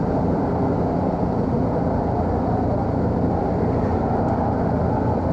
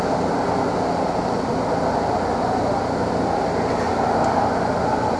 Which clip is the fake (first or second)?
first